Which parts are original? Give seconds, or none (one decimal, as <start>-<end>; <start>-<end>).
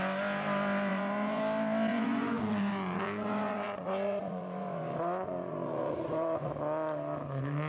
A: 0.0-0.9; 1.4-1.9; 6.5-7.7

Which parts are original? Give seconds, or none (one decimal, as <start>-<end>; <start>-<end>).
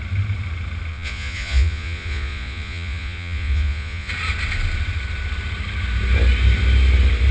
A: 0.0-0.9; 4.1-7.3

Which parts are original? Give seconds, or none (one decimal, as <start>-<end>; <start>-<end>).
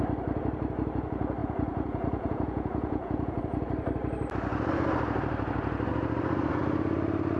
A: 0.0-1.4; 3.4-7.4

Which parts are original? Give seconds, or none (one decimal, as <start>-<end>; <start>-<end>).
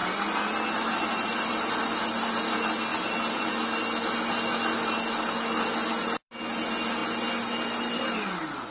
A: 0.0-8.7